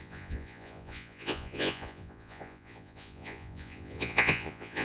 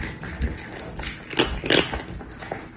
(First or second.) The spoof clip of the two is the first